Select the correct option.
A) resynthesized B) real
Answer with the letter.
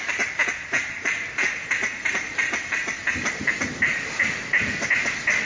B